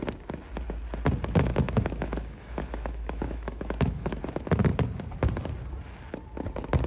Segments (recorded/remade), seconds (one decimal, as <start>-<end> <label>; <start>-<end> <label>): 0.0-1.5 recorded; 1.5-4.2 remade; 4.2-6.9 recorded